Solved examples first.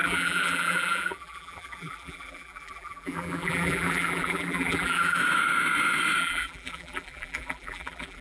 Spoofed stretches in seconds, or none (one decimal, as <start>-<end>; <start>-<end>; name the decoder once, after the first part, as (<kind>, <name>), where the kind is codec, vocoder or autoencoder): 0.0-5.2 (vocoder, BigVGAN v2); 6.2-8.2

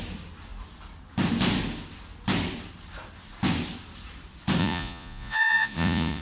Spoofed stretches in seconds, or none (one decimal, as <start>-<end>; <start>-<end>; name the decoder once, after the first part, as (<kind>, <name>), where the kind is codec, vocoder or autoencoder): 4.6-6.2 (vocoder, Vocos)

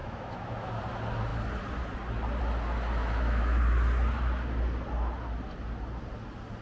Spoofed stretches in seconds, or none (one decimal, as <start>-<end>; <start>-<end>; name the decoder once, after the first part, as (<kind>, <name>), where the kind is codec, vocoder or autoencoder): 0.0-0.8 (autoencoder, DAC-VAE); 3.0-3.6

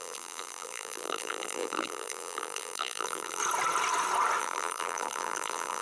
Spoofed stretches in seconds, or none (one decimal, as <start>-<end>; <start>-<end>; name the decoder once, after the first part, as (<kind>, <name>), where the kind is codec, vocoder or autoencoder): 0.0-3.4 (vocoder, BigVGAN v2); 4.4-5.8

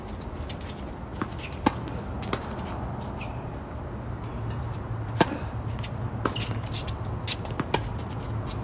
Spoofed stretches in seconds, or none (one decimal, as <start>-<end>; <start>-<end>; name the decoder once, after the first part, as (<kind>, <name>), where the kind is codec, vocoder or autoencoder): none

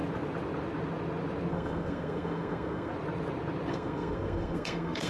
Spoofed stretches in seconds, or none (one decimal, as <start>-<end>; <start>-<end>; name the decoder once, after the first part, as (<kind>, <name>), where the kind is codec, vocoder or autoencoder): 1.5-2.9 (codec, SNAC); 3.7-5.1

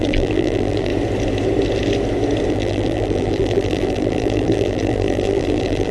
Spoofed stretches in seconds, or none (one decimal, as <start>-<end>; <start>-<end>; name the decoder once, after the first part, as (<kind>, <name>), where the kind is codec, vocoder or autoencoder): 0.0-0.9 (vocoder, BigVGAN v2); 2.5-5.9